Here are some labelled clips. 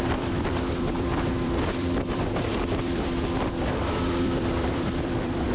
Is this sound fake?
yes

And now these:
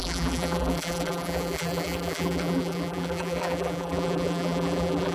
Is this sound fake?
yes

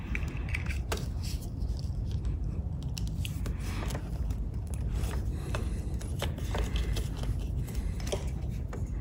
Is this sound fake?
yes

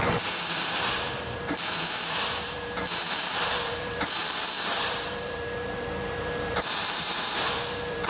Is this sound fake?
yes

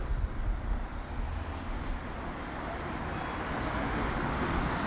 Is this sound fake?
no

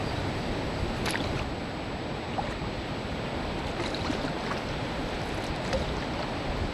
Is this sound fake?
no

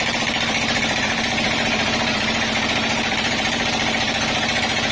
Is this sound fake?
yes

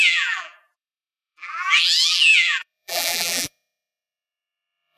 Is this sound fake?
yes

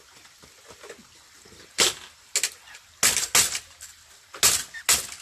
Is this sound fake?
no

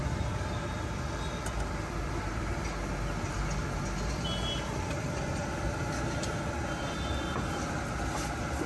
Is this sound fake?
no